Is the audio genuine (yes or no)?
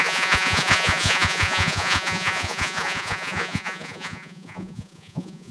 no